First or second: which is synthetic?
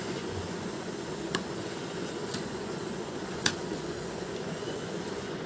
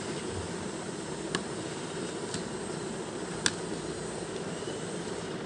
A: first